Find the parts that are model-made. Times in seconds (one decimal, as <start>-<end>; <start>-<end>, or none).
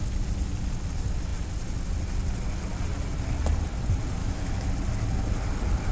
4.2-4.7